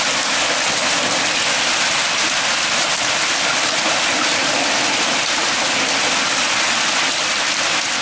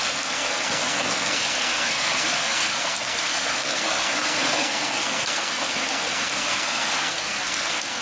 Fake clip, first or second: second